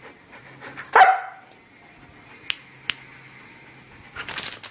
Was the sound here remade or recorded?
recorded